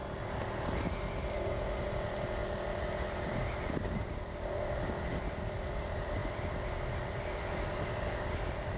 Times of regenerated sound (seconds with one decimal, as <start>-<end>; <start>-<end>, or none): none